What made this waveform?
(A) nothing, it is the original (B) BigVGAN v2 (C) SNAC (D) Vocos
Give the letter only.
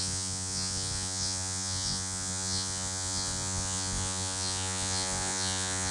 D